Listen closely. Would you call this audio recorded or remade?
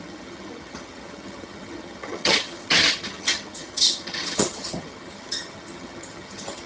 remade